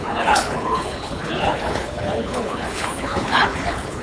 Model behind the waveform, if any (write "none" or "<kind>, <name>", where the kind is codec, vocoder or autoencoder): codec, HILCodec